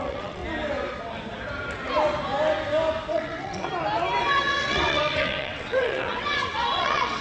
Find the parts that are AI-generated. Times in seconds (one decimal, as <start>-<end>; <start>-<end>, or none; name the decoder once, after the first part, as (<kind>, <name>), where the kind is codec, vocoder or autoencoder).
0.0-0.4 (vocoder, WaveNeXt); 3.1-3.7; 4.2-7.2